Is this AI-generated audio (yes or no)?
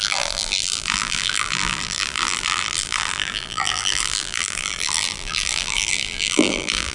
yes